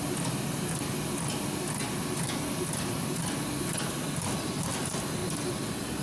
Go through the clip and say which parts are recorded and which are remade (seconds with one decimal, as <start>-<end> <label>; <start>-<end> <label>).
0.0-6.0 recorded